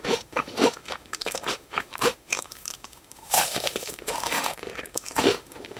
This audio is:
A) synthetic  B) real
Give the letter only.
A